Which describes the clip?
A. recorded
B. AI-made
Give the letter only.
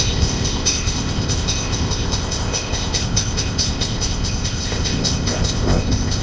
B